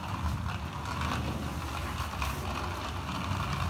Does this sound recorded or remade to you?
recorded